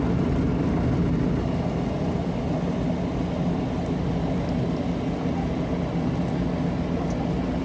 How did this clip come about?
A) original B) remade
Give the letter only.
A